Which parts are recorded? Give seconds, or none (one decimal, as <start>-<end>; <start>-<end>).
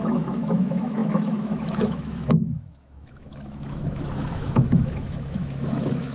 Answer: none